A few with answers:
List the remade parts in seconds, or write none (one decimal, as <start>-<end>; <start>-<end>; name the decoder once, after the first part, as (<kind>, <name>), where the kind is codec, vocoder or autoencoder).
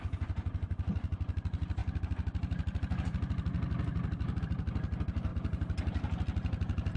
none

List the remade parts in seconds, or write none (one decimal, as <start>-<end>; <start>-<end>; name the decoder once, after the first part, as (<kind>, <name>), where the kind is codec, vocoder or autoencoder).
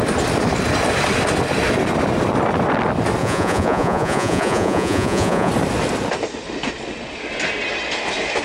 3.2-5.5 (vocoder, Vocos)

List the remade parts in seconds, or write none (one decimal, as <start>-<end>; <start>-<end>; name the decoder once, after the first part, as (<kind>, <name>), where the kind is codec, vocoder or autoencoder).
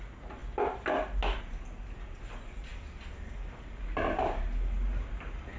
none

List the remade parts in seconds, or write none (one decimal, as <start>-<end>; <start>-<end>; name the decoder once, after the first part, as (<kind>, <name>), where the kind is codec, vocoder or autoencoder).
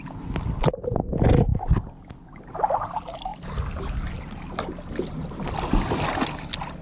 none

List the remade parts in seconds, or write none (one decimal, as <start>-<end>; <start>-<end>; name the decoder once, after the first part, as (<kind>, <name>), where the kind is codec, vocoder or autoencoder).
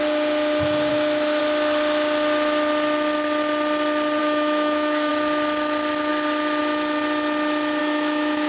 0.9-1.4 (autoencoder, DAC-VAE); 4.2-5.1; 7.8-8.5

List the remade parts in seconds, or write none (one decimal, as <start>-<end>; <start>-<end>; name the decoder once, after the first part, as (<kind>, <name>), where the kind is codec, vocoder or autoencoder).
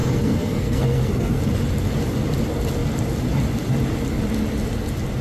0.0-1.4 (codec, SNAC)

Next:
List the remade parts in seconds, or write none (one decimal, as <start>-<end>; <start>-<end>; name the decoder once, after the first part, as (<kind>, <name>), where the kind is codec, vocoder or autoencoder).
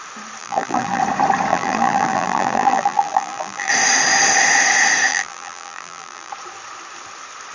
0.4-1.0 (vocoder, BigVGAN v2); 1.5-3.7; 5.1-6.3